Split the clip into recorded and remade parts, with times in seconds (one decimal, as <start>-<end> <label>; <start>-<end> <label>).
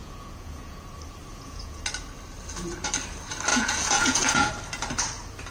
0.0-0.8 remade; 0.8-1.3 recorded; 1.3-1.8 remade; 1.8-3.5 recorded; 3.5-4.5 remade; 4.5-5.5 recorded